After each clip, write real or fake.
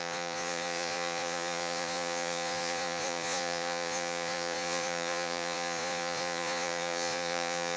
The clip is fake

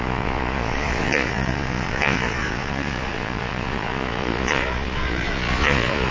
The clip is fake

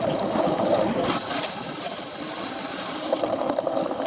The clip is real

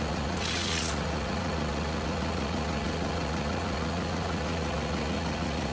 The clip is fake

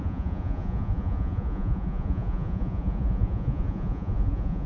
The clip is fake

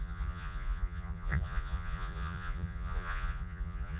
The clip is fake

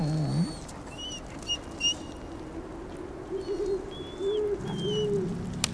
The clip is real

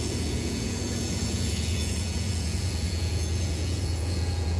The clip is fake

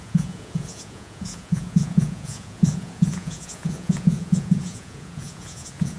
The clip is fake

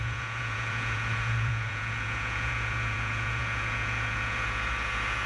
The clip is fake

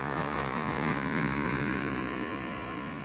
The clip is fake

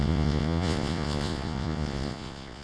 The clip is fake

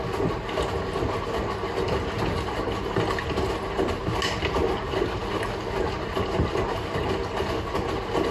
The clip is real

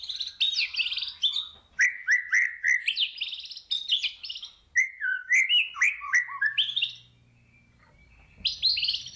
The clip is real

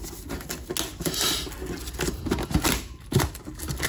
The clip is real